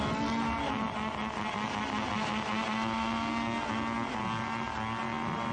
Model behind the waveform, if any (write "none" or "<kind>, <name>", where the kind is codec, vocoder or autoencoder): none